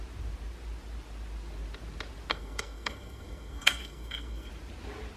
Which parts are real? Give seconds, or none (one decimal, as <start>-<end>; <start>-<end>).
0.0-2.3; 4.5-5.2